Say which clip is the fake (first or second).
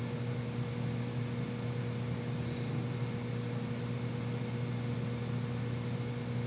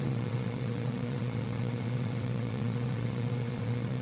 second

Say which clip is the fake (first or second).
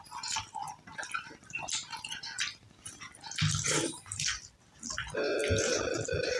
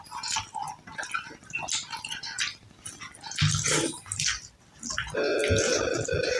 first